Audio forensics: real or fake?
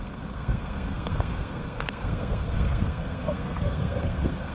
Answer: fake